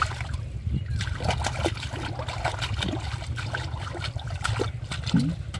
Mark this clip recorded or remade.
recorded